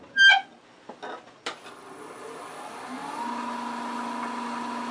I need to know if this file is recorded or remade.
recorded